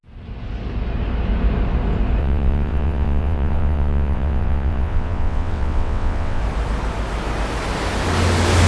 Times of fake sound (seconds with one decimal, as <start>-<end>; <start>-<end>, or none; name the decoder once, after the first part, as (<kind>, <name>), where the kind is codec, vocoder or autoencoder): 2.2-6.4 (vocoder, WaveNeXt)